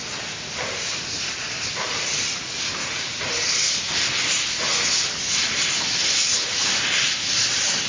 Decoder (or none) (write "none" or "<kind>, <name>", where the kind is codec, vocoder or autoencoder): none